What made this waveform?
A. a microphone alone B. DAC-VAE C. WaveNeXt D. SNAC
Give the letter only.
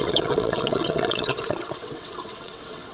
C